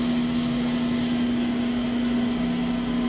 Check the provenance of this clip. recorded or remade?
recorded